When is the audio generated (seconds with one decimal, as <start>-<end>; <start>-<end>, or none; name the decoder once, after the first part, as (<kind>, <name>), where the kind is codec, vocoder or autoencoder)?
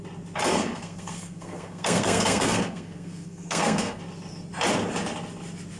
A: 0.5-4.0 (codec, SNAC)